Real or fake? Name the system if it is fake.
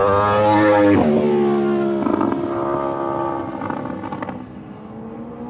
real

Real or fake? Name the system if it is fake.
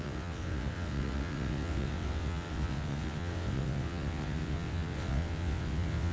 fake, vocoder, WaveNeXt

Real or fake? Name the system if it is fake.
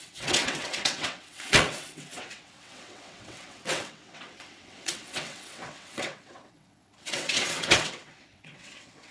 fake, vocoder, WaveNeXt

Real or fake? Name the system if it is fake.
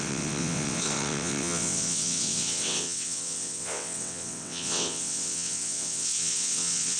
fake, vocoder, WaveNeXt